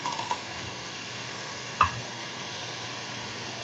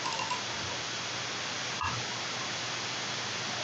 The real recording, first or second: second